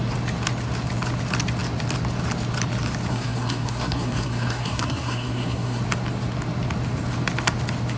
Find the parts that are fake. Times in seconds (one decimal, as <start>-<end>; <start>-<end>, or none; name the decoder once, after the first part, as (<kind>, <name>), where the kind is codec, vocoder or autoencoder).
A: 3.1-5.8 (codec, SNAC)